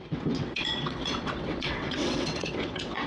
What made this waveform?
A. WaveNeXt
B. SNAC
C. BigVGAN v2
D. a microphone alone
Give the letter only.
A